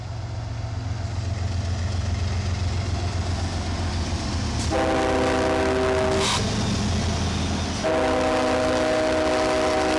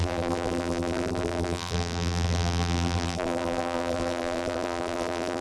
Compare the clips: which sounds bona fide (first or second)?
first